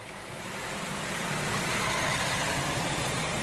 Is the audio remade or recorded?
remade